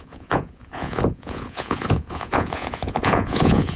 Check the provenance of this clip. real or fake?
fake